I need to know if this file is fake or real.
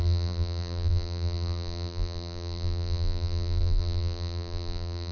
fake